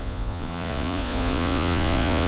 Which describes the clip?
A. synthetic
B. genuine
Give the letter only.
A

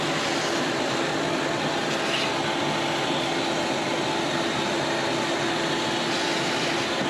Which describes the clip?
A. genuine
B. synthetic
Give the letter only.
A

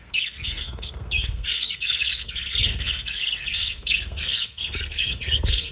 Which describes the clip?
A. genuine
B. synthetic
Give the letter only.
B